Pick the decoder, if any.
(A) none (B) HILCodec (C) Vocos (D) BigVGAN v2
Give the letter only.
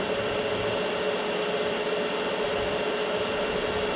A